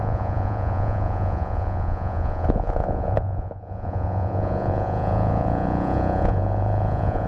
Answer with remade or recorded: remade